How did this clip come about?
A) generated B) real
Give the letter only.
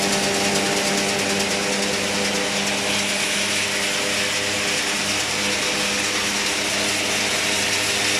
B